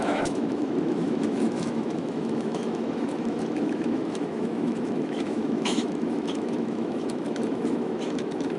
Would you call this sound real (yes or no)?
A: no